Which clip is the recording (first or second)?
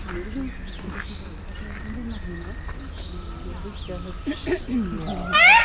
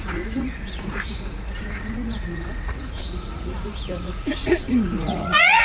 first